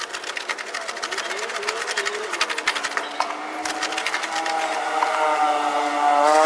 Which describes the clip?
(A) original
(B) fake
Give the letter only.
A